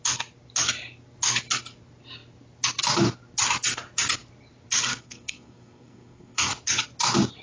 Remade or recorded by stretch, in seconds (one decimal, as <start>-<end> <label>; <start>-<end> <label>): 0.0-4.9 recorded; 4.9-6.5 remade; 6.5-7.4 recorded